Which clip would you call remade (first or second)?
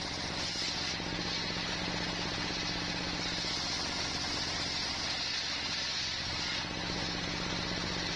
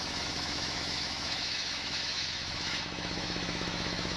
second